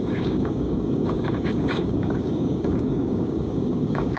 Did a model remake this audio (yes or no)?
yes